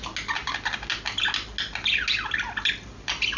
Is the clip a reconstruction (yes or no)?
no